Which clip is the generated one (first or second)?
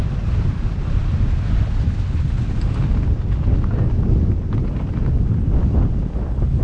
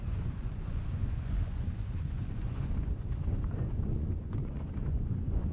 second